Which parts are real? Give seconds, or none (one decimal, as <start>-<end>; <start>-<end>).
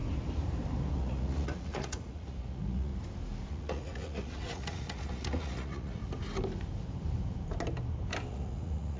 0.0-0.9; 2.9-3.5; 6.0-8.3